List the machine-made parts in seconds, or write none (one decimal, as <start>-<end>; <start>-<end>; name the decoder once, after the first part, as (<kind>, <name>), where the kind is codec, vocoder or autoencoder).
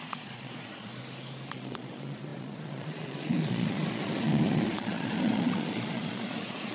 0.0-0.9 (vocoder, Vocos); 1.5-6.7